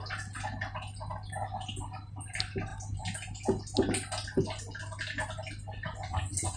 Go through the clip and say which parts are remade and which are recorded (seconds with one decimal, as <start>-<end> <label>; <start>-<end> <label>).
0.0-6.6 recorded